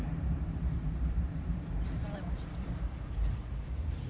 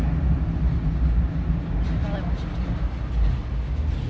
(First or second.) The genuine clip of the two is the second